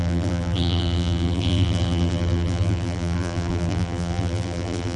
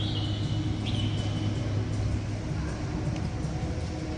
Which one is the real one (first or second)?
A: second